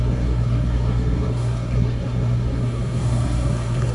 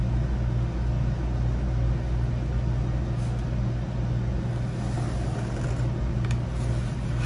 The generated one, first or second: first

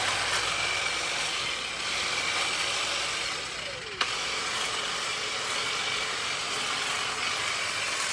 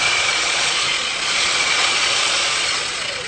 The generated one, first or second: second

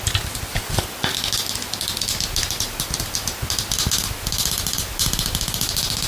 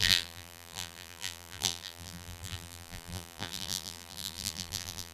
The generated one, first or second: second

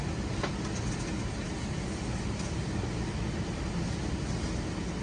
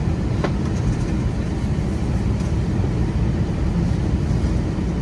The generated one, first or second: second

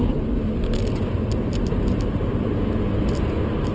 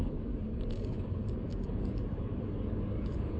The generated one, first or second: second